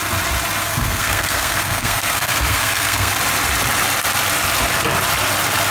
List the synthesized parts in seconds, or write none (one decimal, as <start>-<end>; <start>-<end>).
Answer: 0.6-3.1